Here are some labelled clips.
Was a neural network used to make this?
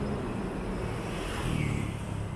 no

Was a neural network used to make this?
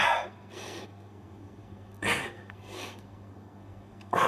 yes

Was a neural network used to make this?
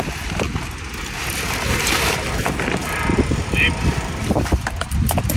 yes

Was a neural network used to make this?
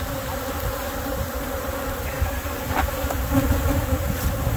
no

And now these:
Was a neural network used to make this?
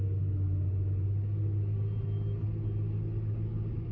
no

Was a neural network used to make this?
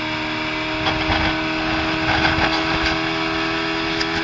no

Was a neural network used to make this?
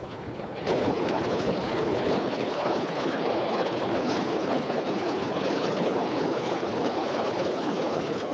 yes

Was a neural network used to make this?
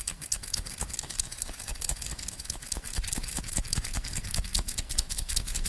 yes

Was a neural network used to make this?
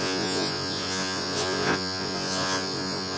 yes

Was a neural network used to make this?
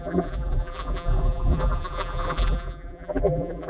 yes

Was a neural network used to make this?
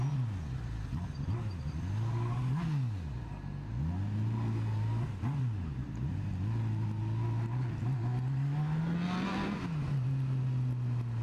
no